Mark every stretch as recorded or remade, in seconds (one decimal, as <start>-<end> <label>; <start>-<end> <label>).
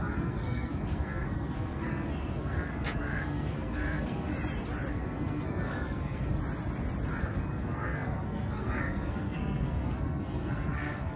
0.0-4.3 remade; 4.3-4.9 recorded; 4.9-6.4 remade; 6.4-7.2 recorded; 7.2-11.2 remade